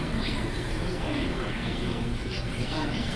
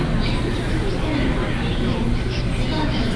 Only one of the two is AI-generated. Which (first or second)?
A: first